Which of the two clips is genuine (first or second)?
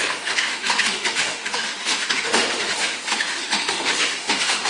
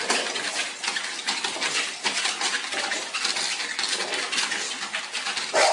second